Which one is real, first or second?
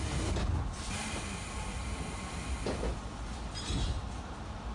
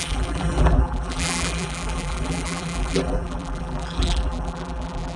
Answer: first